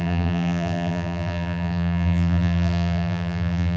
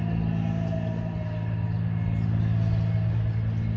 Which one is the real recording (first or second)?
second